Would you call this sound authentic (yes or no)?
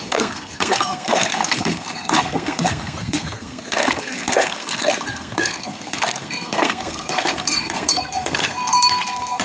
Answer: no